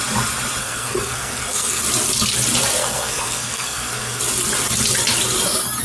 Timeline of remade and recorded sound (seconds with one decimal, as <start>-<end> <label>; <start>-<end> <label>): 0.0-0.6 recorded; 0.6-1.8 remade; 1.8-2.8 recorded; 2.8-4.2 remade; 4.2-5.8 recorded